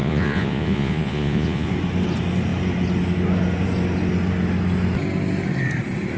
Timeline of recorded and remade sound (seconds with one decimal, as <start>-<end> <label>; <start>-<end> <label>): 0.0-1.7 remade; 1.7-6.2 recorded